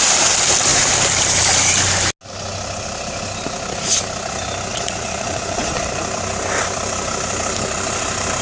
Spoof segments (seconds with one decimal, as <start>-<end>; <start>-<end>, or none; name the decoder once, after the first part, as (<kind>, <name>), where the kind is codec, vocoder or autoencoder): 4.7-5.8 (vocoder, Vocos)